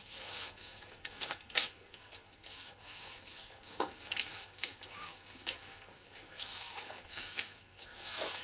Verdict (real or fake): fake